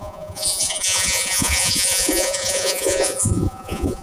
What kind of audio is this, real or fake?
fake